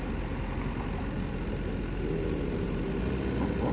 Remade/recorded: recorded